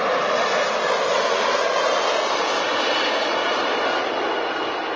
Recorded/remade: recorded